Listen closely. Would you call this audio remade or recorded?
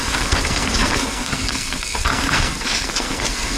remade